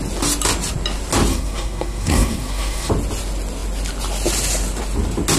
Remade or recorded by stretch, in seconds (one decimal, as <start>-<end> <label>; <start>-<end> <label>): 0.0-1.3 recorded; 1.3-2.9 remade; 2.9-5.4 recorded